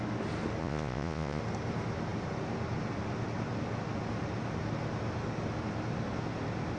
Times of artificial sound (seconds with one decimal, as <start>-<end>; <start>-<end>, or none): 0.6-1.4